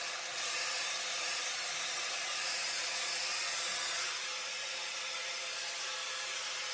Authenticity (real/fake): fake